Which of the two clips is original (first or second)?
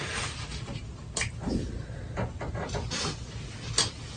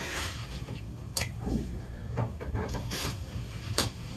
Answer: first